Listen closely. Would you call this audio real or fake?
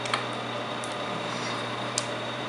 fake